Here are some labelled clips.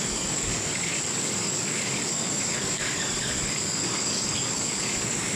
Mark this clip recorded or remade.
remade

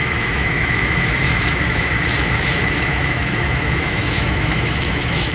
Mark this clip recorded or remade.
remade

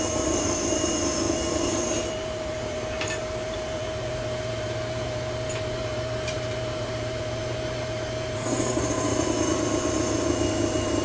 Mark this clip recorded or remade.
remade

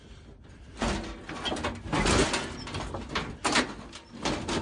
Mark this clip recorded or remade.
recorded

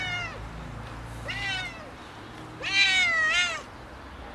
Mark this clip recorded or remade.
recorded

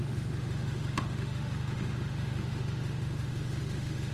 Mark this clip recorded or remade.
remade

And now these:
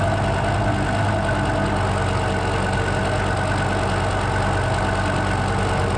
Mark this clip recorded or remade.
recorded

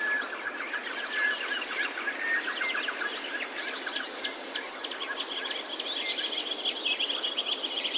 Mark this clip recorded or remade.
recorded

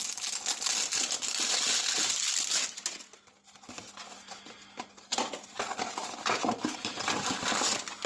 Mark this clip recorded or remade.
recorded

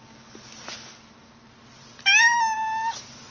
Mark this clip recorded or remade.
recorded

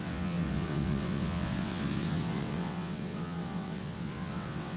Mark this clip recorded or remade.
remade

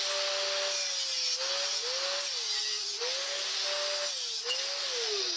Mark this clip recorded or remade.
recorded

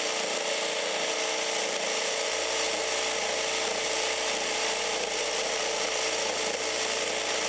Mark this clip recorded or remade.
recorded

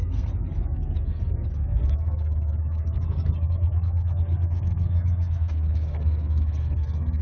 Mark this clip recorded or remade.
remade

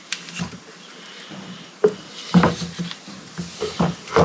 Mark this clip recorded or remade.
recorded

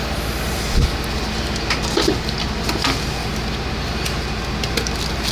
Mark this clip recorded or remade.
recorded